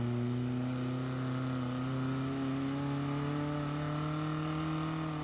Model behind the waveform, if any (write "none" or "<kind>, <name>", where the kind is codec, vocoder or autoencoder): none